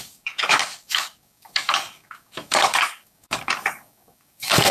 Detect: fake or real fake